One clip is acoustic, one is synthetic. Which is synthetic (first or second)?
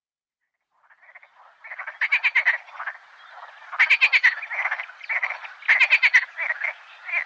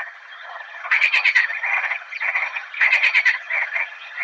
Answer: second